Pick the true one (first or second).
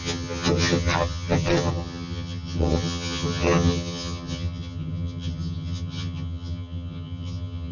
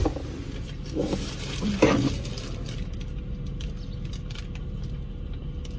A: second